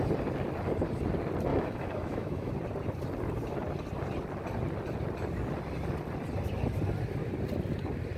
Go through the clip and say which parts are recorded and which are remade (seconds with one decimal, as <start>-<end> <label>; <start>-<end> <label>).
0.0-1.5 recorded; 1.5-2.5 remade; 2.5-8.2 recorded